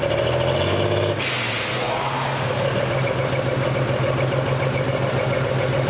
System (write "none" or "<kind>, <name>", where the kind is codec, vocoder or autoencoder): none